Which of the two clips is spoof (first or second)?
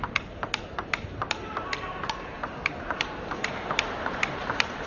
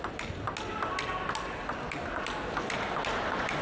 first